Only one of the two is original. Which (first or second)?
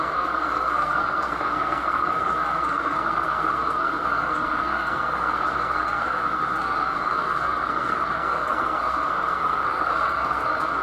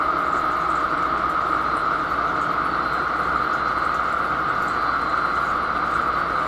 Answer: second